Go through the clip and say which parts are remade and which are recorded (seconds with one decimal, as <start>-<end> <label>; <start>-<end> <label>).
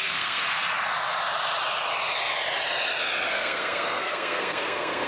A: 0.0-0.6 remade; 0.6-3.3 recorded; 3.3-5.1 remade